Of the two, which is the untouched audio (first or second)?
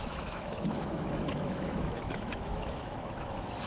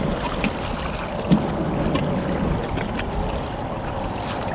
second